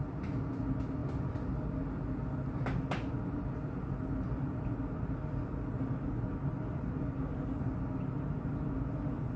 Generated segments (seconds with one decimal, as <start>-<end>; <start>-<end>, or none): none